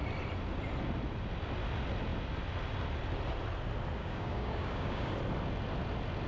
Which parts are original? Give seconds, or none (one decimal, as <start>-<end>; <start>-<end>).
0.0-4.0; 5.1-6.3